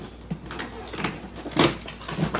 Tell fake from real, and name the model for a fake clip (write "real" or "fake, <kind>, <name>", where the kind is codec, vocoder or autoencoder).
real